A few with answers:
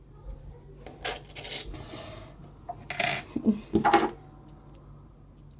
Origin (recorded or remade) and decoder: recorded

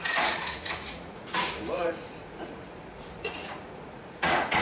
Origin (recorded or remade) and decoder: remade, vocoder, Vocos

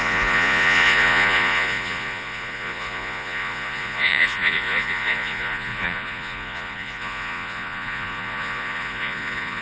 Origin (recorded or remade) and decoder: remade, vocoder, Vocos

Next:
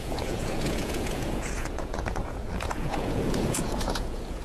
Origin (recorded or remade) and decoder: remade, vocoder, Vocos